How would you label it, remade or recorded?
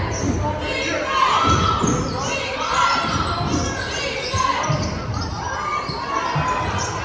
recorded